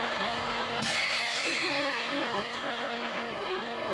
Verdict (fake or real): fake